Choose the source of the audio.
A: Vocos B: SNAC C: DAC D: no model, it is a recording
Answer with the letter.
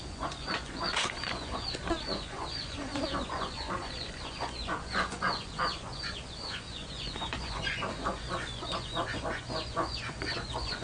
A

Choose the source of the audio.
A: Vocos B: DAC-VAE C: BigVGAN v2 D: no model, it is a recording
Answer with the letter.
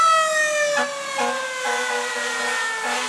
D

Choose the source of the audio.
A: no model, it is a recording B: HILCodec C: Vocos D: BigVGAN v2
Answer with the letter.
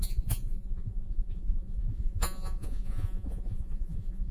C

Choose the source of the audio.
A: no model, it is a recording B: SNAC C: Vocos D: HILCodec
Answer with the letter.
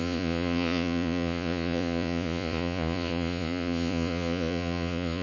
C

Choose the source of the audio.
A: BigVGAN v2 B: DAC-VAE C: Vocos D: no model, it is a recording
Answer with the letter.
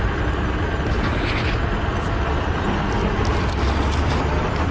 D